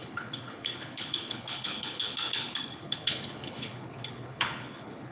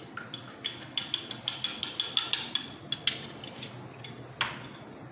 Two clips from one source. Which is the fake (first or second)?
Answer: first